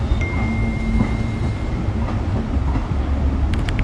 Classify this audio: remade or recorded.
recorded